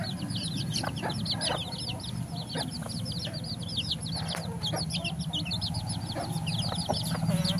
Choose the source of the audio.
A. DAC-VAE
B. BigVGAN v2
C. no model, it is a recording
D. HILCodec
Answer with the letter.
C